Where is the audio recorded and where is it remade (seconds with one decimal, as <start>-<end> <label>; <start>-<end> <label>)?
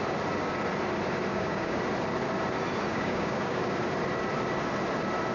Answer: 0.0-1.3 recorded; 1.3-1.8 remade; 1.8-2.9 recorded; 2.9-3.8 remade; 3.8-5.3 recorded